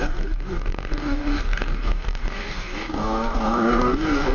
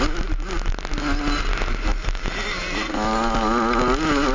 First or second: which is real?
second